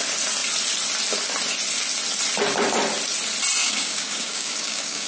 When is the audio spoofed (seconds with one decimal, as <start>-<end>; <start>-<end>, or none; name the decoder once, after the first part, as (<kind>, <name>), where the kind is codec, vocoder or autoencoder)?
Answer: 3.6-5.1 (codec, DAC)